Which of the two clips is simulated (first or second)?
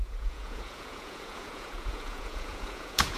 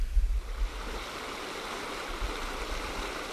first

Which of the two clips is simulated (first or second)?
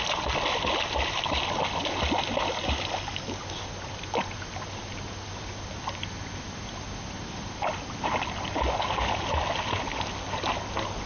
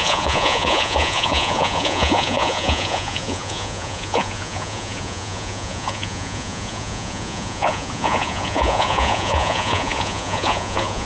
second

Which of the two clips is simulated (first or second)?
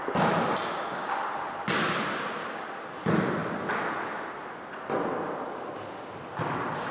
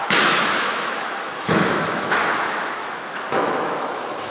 second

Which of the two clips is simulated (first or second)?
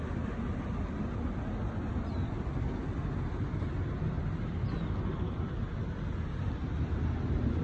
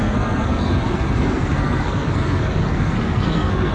second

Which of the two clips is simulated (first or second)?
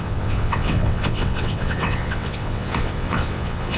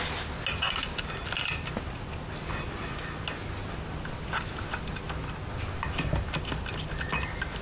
first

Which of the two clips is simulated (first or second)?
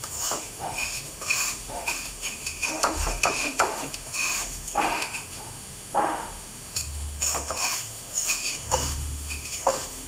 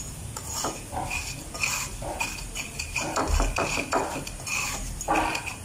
first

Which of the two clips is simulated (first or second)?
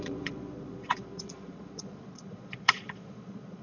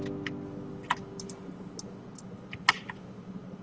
first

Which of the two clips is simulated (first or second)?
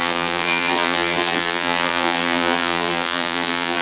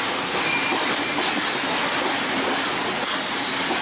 first